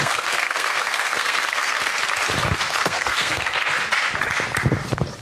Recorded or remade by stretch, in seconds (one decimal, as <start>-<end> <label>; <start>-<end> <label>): 0.0-1.9 remade; 1.9-2.8 recorded; 2.8-3.7 remade; 3.7-5.2 recorded